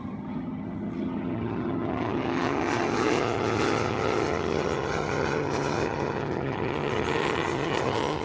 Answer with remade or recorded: remade